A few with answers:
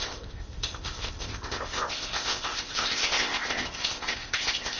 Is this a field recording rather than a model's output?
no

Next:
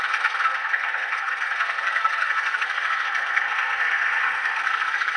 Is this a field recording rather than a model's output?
no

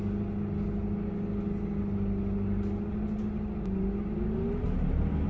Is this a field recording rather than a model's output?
yes